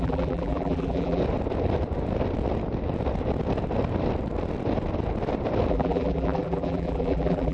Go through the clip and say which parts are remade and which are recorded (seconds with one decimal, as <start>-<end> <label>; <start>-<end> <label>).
0.0-1.2 remade; 1.2-5.7 recorded; 5.7-7.5 remade